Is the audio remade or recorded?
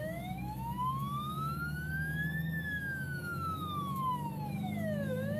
remade